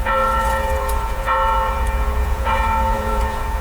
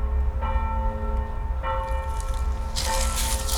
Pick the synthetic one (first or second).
first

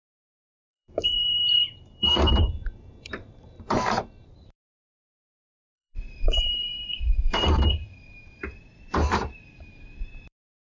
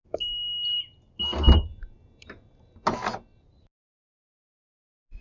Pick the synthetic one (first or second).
first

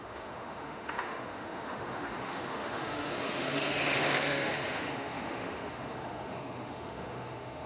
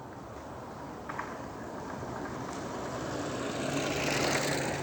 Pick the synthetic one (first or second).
first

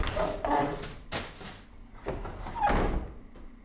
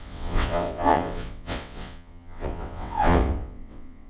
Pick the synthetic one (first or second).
second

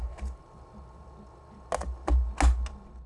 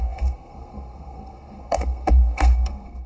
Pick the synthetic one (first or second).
second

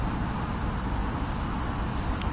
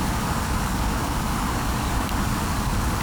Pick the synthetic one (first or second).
second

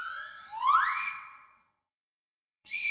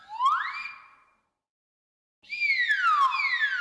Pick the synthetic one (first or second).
first